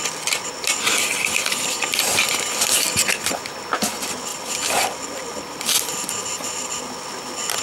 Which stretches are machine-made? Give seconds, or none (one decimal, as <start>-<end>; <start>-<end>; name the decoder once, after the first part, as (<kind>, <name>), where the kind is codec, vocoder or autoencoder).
4.3-6.8 (vocoder, BigVGAN v2)